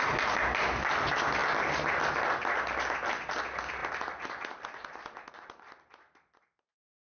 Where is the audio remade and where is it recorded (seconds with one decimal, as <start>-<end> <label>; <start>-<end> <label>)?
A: 0.0-7.1 recorded